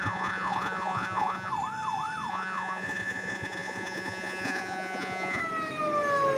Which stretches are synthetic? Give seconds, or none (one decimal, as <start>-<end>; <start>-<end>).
0.0-1.5; 2.3-5.4